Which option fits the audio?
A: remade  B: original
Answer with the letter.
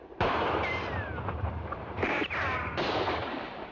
A